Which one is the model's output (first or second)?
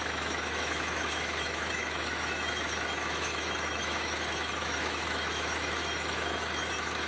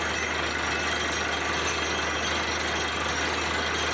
first